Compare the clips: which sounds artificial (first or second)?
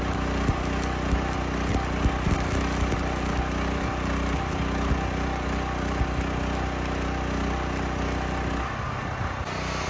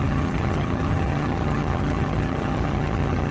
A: second